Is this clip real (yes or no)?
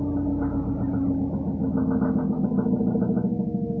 yes